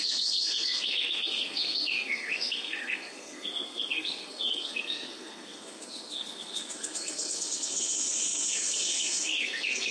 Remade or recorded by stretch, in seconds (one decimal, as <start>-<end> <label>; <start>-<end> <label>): 0.0-9.9 remade